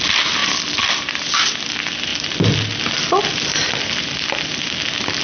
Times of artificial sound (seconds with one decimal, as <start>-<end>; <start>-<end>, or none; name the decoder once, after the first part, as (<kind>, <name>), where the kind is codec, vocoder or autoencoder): none